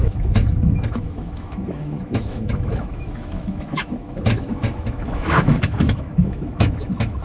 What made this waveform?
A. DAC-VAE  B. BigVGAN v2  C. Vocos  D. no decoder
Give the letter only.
A